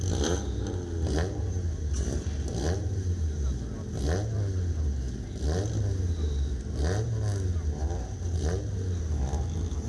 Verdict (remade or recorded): recorded